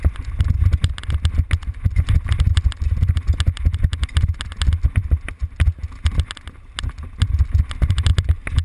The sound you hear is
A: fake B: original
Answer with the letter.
B